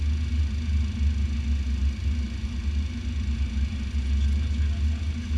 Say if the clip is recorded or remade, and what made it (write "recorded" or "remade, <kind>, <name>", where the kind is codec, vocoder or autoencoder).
recorded